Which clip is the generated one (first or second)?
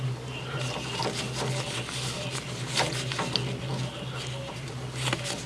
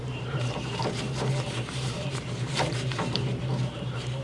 second